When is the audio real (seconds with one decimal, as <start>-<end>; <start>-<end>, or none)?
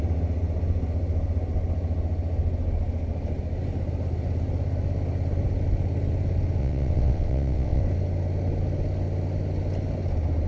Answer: 0.0-6.6; 7.8-10.5